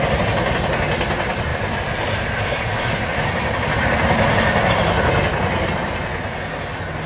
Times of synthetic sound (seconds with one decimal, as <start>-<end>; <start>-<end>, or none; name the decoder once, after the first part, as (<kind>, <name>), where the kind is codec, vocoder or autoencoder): 1.5-4.7 (vocoder, BigVGAN v2)